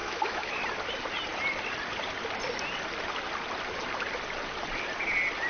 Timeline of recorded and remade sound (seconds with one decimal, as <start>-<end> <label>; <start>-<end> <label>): 0.0-0.5 remade; 0.5-5.5 recorded